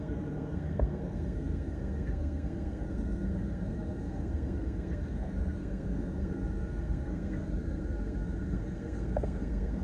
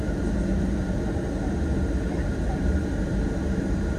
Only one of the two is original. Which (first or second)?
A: second